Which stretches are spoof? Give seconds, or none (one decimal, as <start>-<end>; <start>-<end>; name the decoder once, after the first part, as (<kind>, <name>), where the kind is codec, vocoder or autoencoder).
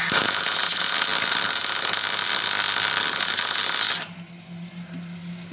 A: none